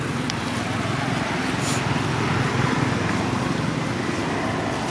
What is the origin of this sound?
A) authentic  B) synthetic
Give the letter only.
A